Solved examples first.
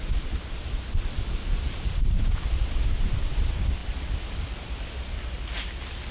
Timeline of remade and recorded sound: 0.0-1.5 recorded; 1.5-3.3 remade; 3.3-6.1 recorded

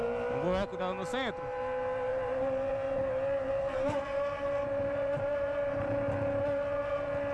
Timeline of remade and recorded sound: 0.0-2.1 recorded; 2.1-5.9 remade; 5.9-7.3 recorded

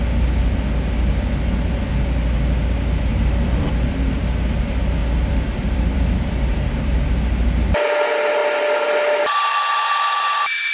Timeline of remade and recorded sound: 0.0-3.1 recorded; 3.1-4.2 remade; 4.2-5.0 recorded; 5.0-7.2 remade; 7.2-8.4 recorded; 8.4-9.2 remade; 9.2-10.7 recorded

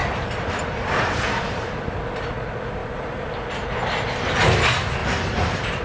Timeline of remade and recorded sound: 0.0-2.8 recorded; 2.8-3.4 remade; 3.4-5.0 recorded; 5.0-5.8 remade

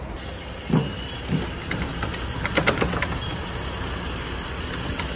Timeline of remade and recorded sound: 0.0-5.2 recorded